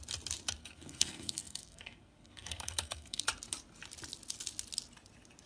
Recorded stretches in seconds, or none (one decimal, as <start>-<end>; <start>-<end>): 0.0-0.6; 3.2-5.5